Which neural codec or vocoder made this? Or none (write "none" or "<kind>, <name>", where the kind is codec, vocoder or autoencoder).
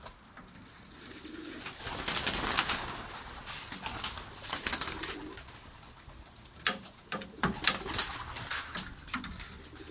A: none